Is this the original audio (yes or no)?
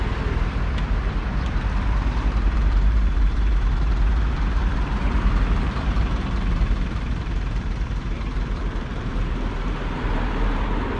no